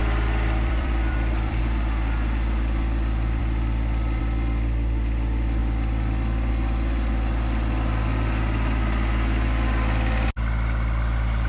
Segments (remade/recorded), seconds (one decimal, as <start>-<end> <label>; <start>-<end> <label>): 0.0-1.6 remade; 1.6-11.5 recorded